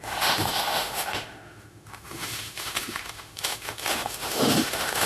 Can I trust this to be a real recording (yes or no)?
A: no